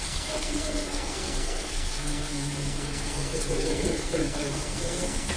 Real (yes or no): no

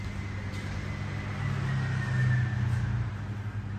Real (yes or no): yes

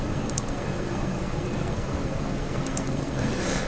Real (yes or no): no